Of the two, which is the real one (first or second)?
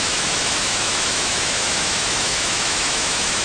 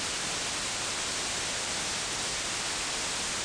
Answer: second